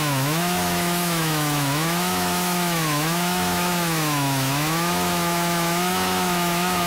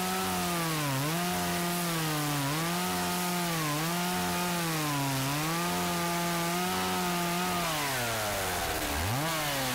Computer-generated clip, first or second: first